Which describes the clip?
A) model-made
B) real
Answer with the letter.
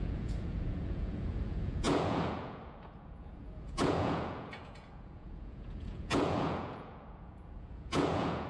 A